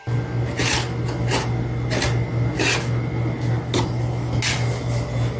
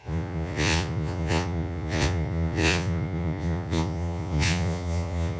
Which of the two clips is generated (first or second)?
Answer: second